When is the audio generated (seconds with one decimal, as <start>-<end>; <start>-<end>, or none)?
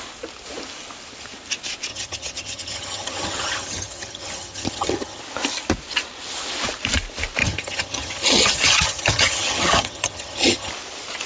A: 1.9-5.2; 7.4-10.7